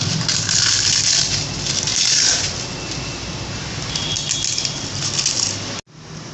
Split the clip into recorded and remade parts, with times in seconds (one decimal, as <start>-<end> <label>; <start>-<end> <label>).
0.0-1.9 recorded; 1.9-2.5 remade; 2.5-6.3 recorded